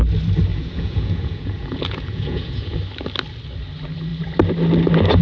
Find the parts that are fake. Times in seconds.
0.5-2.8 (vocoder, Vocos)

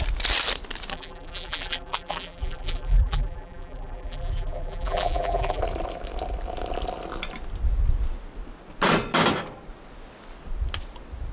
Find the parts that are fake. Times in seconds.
0.9-5.6 (vocoder, BigVGAN v2)

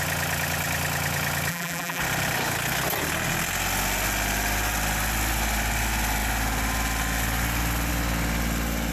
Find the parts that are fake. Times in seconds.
1.5-2.0 (vocoder, BigVGAN v2)

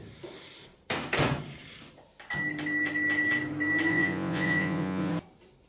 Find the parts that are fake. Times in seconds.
3.9-5.1 (vocoder, Vocos)

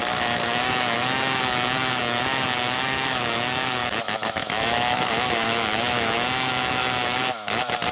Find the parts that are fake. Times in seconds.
0.0-7.9 (autoencoder, DAC-VAE)

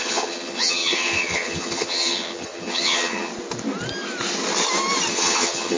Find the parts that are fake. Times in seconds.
0.0-3.3 (vocoder, HiFi-GAN); 5.1-5.8

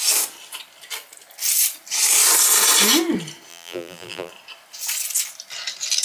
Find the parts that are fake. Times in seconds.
3.5-4.3 (vocoder, BigVGAN v2)